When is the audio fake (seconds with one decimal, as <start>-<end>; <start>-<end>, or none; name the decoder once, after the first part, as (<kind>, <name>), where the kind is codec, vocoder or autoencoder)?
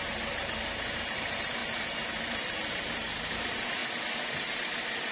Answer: 0.0-1.6 (vocoder, BigVGAN v2); 3.3-3.8; 4.3-5.1